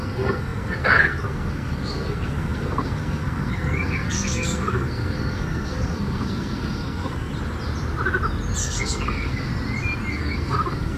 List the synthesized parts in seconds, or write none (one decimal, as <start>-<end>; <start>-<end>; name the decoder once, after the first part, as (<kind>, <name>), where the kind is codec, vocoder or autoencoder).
0.0-7.3 (codec, SNAC); 8.6-9.5; 10.1-11.0